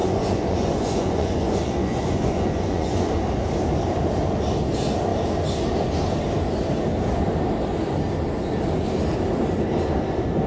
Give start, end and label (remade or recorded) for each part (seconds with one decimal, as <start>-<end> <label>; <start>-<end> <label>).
0.0-3.1 remade; 3.1-10.5 recorded